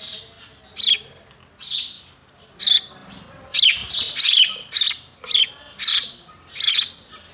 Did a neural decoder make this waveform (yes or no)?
no